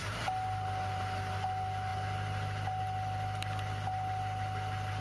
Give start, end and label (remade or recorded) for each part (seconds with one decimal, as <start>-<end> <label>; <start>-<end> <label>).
0.0-5.0 recorded